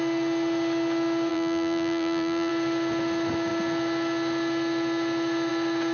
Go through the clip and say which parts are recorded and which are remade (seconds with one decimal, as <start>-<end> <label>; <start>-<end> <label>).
0.0-1.3 recorded; 1.3-2.5 remade; 2.5-5.9 recorded